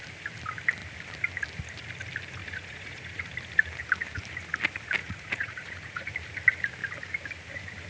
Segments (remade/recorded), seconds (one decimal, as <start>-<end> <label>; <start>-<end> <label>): 0.0-2.4 recorded; 2.4-3.2 remade; 3.2-5.0 recorded; 5.0-6.1 remade; 6.1-7.9 recorded